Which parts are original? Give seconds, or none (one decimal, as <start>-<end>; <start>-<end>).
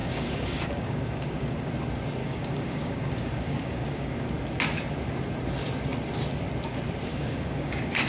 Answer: 1.7-2.2; 4.3-7.1